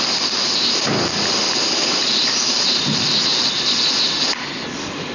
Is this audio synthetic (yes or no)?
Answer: no